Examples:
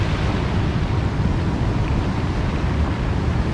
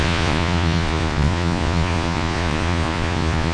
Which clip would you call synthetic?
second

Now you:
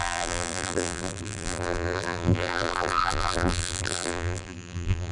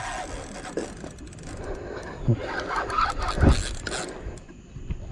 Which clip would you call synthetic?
first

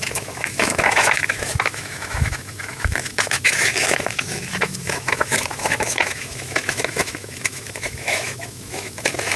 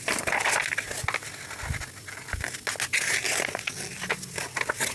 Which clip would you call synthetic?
first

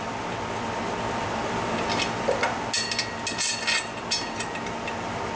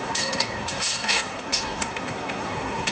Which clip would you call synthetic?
second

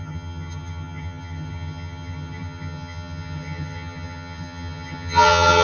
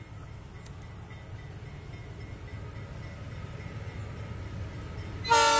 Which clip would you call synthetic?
first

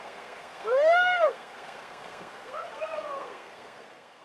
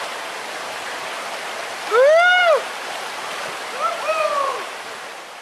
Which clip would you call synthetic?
first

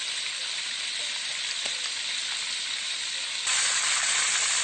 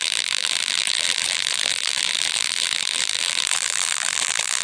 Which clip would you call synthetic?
second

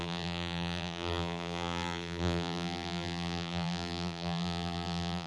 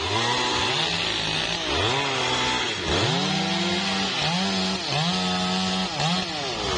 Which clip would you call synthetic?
first